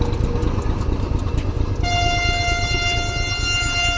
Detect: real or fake real